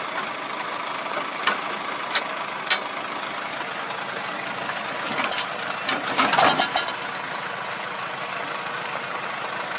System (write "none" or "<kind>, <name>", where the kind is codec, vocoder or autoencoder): none